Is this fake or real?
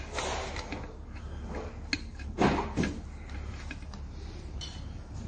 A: real